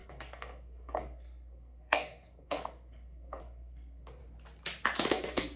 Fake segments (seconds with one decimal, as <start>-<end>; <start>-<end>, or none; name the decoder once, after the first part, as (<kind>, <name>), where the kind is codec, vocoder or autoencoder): 0.0-4.2 (codec, SNAC); 5.1-5.6